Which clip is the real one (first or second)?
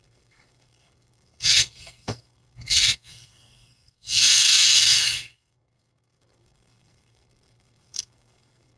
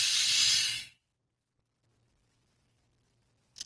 second